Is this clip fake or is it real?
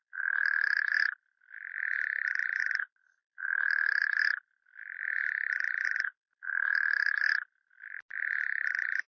real